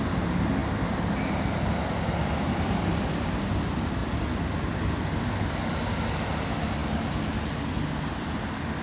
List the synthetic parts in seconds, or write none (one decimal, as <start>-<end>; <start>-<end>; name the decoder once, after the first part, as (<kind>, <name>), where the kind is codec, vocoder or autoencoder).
none